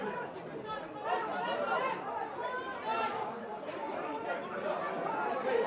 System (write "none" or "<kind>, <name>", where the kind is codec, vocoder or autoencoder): vocoder, BigVGAN v2